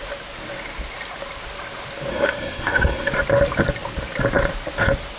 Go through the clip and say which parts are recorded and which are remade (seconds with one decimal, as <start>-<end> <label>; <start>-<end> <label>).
0.0-2.1 recorded; 2.1-3.1 remade; 3.1-5.2 recorded